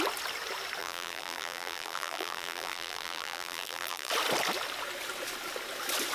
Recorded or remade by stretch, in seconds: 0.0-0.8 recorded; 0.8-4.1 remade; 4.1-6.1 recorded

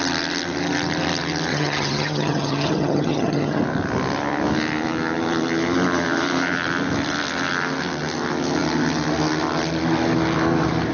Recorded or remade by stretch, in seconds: 0.0-1.5 recorded; 1.5-3.6 remade; 3.6-10.9 recorded

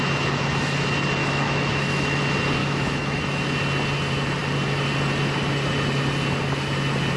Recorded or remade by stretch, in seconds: 0.0-1.2 recorded; 1.2-2.2 remade; 2.2-2.6 recorded; 2.6-3.2 remade; 3.2-7.2 recorded